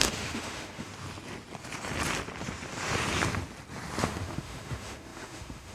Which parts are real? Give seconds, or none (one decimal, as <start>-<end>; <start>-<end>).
0.9-4.0

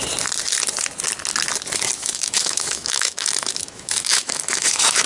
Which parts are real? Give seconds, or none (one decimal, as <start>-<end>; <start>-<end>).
0.0-2.0

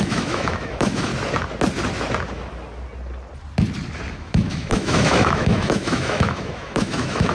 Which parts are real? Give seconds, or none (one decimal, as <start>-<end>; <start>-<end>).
1.1-4.1

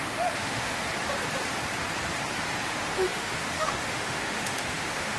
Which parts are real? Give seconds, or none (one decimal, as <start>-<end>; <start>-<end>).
0.8-2.7

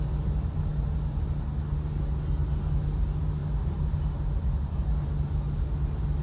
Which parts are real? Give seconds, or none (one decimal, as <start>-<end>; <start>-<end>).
0.0-6.2

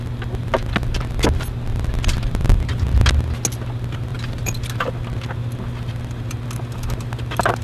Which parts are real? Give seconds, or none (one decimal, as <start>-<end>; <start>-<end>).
0.0-7.6

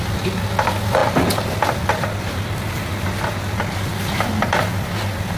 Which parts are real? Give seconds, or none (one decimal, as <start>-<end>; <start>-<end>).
0.0-5.4

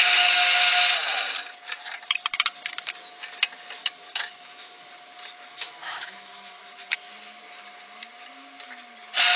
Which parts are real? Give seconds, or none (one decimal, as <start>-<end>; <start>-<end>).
0.0-3.8; 4.9-5.5; 6.6-9.4